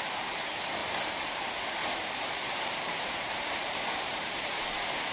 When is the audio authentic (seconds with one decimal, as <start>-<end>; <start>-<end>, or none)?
0.0-0.8; 1.4-1.8